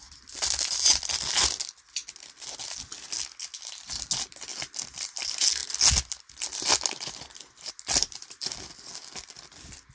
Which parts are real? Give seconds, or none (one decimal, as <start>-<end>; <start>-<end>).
0.0-4.5; 5.0-9.9